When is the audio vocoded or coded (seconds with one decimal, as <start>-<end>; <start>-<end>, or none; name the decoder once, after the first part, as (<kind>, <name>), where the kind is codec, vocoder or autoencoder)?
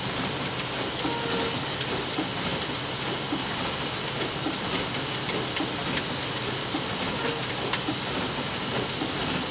none